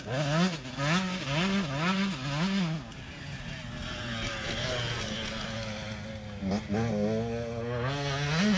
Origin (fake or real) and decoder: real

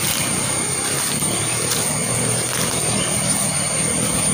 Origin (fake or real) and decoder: real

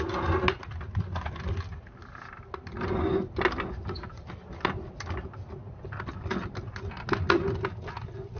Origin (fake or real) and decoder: real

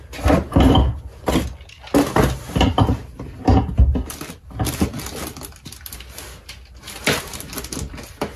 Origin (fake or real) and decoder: real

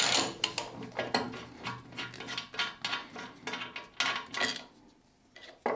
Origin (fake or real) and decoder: real